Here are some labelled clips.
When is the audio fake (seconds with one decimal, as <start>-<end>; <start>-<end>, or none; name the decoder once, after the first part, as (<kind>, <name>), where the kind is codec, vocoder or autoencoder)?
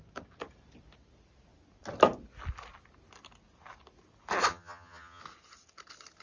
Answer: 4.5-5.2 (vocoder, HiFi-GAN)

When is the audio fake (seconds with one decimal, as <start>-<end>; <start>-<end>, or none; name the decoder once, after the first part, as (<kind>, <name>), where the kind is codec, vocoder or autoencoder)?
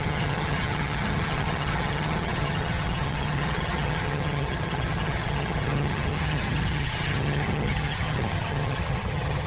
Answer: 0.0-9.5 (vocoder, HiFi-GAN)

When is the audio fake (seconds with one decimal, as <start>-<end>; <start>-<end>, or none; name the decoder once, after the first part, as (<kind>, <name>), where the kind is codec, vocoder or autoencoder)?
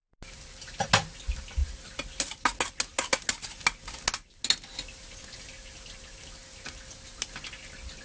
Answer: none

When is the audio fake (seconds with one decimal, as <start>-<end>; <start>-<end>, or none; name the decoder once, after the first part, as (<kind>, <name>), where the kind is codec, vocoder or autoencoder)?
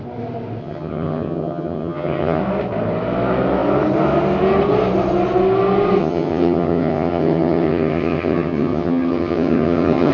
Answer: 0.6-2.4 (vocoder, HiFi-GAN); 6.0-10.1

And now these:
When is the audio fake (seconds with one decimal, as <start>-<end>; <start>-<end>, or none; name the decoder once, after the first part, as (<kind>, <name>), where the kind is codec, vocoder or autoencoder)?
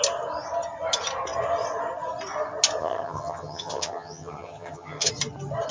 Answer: 2.8-5.1 (vocoder, HiFi-GAN)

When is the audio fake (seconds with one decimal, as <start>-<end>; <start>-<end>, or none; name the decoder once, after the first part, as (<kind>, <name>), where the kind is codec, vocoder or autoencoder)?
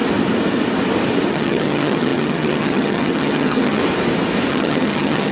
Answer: 1.3-3.8 (vocoder, HiFi-GAN); 4.5-5.3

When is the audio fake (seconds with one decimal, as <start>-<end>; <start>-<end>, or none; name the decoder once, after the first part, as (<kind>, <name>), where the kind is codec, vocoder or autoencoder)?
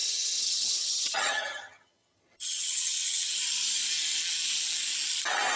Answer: 0.0-3.4 (vocoder, HiFi-GAN)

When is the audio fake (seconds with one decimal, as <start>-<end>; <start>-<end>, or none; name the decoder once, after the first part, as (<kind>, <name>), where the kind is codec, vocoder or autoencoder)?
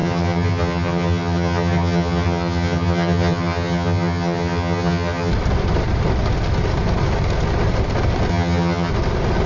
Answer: 0.0-5.3 (vocoder, HiFi-GAN); 8.3-8.9